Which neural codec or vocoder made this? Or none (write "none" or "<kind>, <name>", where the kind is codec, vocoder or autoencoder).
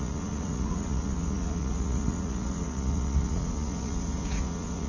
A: vocoder, Vocos